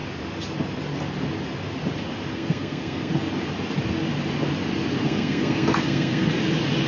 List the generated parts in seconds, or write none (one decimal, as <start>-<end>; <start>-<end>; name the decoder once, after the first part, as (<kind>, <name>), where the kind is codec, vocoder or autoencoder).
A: 2.3-3.1 (codec, SNAC); 5.0-6.3